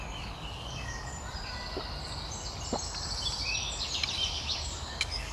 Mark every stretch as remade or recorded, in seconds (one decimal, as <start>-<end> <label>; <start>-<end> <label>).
0.0-1.1 remade; 1.1-4.3 recorded; 4.3-5.3 remade